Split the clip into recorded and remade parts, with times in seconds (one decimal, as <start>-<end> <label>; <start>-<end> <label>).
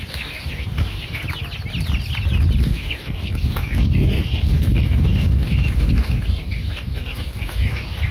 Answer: 0.0-1.2 remade; 1.2-2.6 recorded; 2.6-8.1 remade